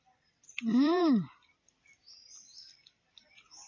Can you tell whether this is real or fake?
fake